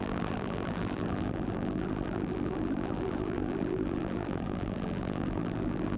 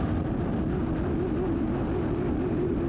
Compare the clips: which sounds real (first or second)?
second